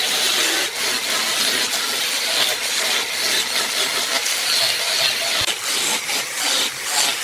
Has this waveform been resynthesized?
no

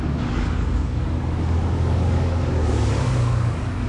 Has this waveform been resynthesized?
yes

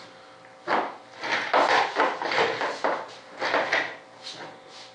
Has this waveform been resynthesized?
no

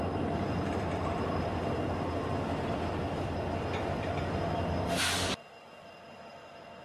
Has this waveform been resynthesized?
no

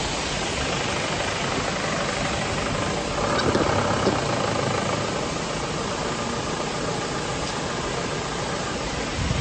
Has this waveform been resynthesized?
no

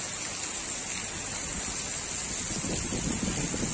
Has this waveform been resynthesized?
no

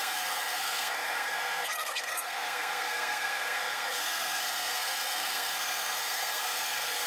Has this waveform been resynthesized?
yes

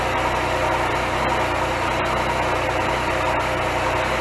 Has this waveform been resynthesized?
no